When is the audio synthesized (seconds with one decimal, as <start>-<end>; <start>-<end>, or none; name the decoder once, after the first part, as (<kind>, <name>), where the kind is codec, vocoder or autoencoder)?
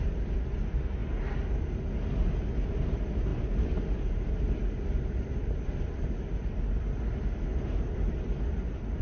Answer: none